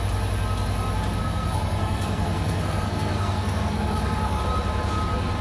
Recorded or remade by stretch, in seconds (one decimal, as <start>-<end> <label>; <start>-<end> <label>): 0.0-1.2 recorded; 1.2-4.4 remade; 4.4-5.4 recorded